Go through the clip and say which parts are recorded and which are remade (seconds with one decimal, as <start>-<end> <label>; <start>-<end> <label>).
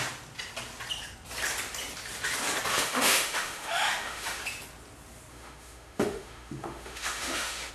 0.0-2.7 recorded; 2.7-4.4 remade; 4.4-5.3 recorded; 5.3-7.7 remade